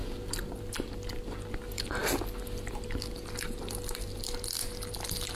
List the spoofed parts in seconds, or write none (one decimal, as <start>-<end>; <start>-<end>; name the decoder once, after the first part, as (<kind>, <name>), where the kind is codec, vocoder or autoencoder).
none